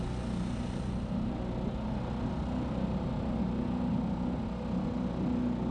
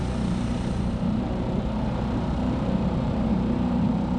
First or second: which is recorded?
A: first